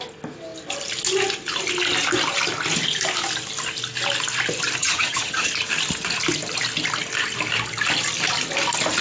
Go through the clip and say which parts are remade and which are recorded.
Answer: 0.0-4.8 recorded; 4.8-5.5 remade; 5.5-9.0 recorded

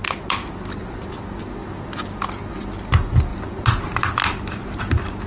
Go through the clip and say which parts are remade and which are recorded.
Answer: 0.0-5.3 recorded

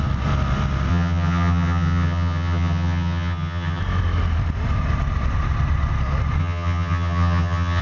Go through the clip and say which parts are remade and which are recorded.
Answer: 0.0-0.9 recorded; 0.9-3.8 remade; 3.8-6.4 recorded; 6.4-7.8 remade

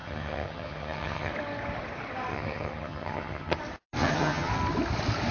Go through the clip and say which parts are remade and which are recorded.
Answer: 0.0-1.3 remade; 1.3-2.3 recorded; 2.3-3.6 remade; 3.6-4.0 recorded; 4.0-4.5 remade; 4.5-5.3 recorded

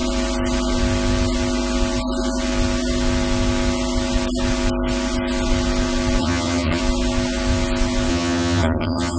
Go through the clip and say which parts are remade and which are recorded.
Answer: 0.0-6.2 recorded; 6.2-6.8 remade; 6.8-8.1 recorded; 8.1-9.2 remade

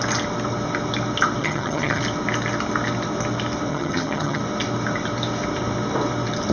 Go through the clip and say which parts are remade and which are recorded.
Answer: 0.0-1.4 recorded; 1.4-2.0 remade; 2.0-3.7 recorded; 3.7-4.4 remade; 4.4-6.5 recorded

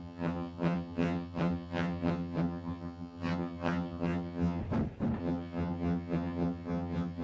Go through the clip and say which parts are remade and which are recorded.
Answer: 0.0-4.6 remade; 4.6-5.2 recorded; 5.2-7.2 remade